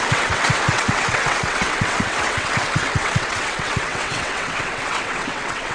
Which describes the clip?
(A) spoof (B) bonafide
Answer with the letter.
A